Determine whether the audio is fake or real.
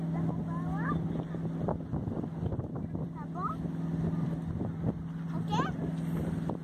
real